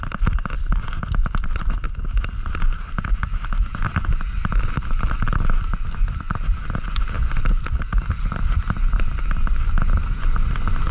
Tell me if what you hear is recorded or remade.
recorded